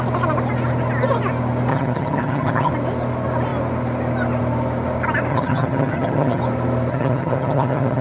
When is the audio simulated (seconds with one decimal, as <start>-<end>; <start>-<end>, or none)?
1.7-2.7; 5.3-6.4; 6.9-8.0